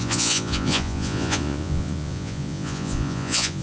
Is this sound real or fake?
fake